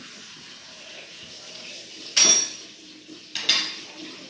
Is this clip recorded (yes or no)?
yes